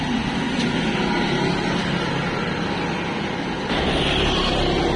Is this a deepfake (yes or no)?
no